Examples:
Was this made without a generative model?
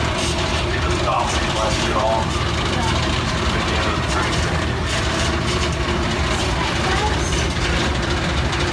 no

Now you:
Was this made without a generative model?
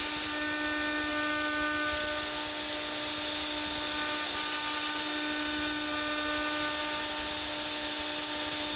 yes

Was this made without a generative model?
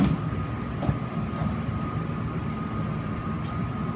no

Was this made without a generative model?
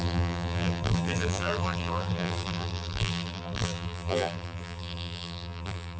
no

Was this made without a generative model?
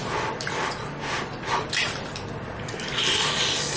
no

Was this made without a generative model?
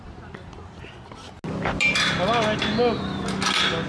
yes